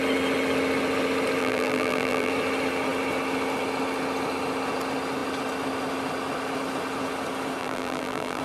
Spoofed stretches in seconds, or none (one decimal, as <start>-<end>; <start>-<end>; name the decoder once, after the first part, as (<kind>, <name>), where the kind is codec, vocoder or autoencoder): 1.4-2.3 (vocoder, BigVGAN v2); 7.6-8.4